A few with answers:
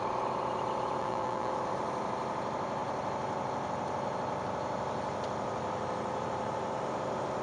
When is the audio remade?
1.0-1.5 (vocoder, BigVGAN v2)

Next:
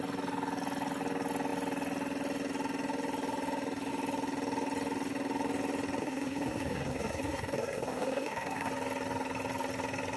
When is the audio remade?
6.0-8.7 (codec, SNAC)

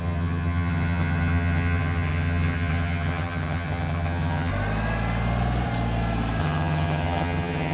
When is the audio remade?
0.0-4.5 (vocoder, HiFi-GAN); 6.4-7.7

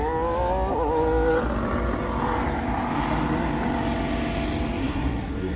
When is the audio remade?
4.8-5.6 (codec, SNAC)

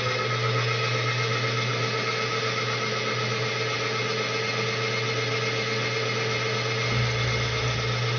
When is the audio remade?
none